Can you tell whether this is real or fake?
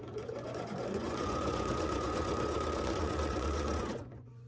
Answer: fake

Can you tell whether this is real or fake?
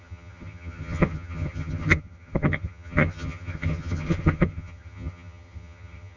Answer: fake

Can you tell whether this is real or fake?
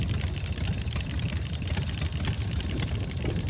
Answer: real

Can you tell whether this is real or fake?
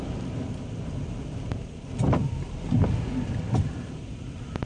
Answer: fake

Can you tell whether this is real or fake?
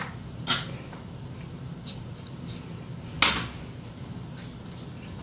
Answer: real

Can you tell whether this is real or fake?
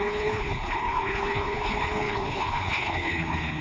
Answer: fake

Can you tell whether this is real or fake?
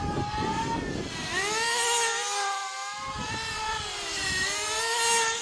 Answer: real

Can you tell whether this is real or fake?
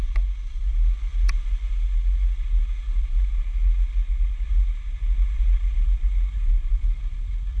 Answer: real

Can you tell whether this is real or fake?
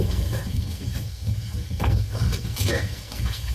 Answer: fake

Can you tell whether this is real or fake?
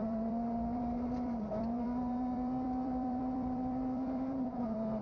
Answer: fake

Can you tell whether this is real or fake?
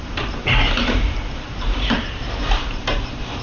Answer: fake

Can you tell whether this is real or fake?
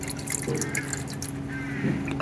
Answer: real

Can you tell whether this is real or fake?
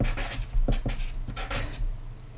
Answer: real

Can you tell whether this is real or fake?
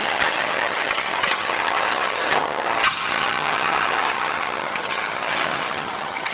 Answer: fake